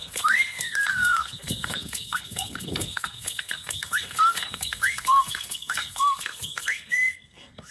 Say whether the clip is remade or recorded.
remade